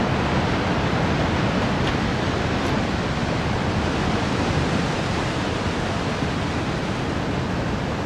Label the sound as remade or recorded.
recorded